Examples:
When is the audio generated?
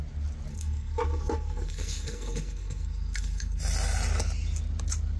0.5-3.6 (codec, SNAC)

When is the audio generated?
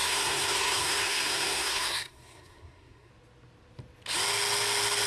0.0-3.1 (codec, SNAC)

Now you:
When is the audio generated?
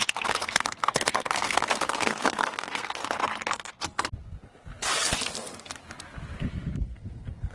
0.0-3.0 (codec, SNAC); 6.8-7.5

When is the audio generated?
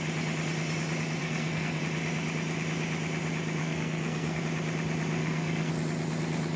1.2-1.8 (codec, SNAC); 3.6-4.4; 5.2-5.7